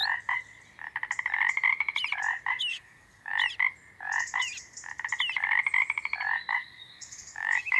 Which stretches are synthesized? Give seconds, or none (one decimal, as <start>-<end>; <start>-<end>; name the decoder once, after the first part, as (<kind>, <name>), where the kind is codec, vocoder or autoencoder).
2.7-3.3 (codec, DAC); 6.5-7.8